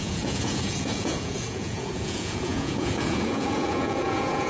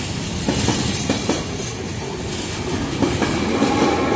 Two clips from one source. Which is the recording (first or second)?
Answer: second